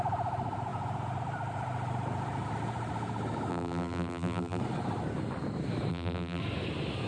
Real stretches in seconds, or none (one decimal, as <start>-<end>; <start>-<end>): 0.0-3.5; 4.6-5.9; 6.4-7.1